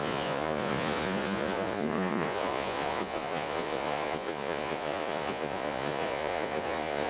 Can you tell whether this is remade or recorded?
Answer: remade